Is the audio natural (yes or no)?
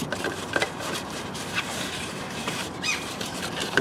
no